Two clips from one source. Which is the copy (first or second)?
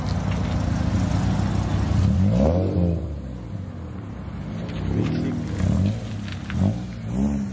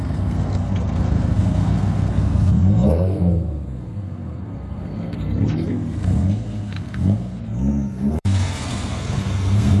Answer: second